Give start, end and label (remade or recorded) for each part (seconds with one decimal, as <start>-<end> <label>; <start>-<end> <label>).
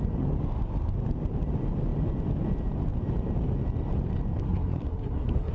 0.0-4.4 recorded; 4.4-5.5 remade